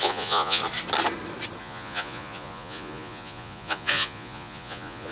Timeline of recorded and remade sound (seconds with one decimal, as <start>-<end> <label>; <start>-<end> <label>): 0.0-0.6 remade; 0.6-1.6 recorded; 1.6-5.1 remade